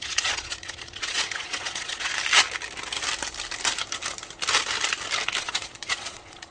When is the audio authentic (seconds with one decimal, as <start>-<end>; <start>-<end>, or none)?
2.1-5.4